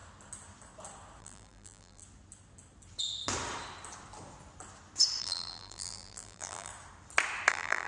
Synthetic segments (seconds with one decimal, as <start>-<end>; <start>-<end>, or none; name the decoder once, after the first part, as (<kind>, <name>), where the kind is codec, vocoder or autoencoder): 1.2-2.0 (vocoder, BigVGAN v2); 5.2-6.7; 7.5-7.9